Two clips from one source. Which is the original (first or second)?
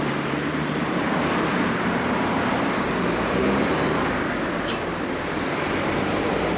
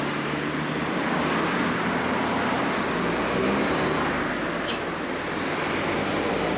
second